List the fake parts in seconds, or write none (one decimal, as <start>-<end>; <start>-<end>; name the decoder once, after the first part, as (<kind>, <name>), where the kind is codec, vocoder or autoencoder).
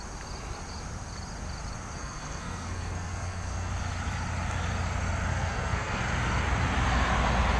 2.0-3.7 (codec, SNAC); 5.3-6.0